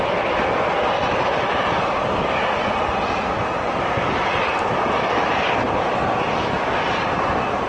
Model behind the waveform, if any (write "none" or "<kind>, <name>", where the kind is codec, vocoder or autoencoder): none